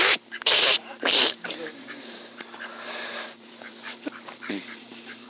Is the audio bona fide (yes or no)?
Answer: no